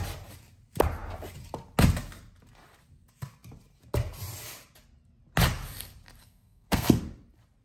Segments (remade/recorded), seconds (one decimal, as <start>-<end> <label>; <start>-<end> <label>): 0.0-6.2 recorded; 6.2-7.0 remade; 7.0-7.6 recorded